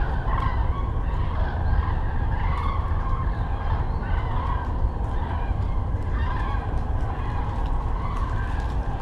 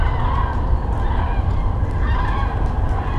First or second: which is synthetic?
first